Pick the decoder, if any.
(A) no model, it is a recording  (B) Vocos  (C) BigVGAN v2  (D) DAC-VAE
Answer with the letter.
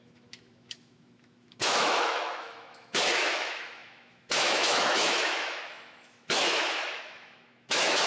D